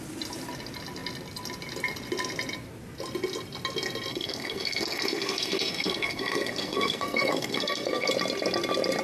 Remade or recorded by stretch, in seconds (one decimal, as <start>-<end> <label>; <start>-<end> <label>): 0.0-4.1 recorded; 4.1-8.1 remade; 8.1-9.0 recorded